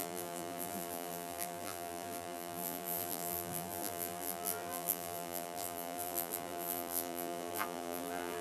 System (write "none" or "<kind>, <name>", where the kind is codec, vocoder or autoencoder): vocoder, BigVGAN v2